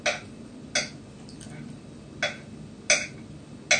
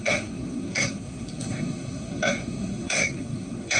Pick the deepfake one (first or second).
second